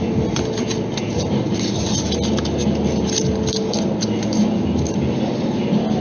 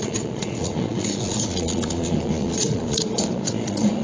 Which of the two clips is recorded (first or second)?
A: first